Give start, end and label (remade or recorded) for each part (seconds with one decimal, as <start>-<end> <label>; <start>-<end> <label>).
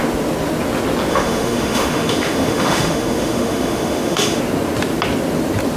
0.0-1.1 recorded; 1.1-4.4 remade; 4.4-5.8 recorded